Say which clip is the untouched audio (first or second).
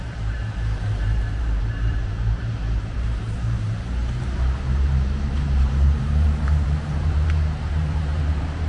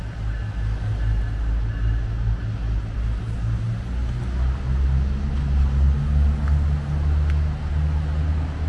second